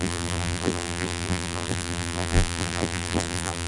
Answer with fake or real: fake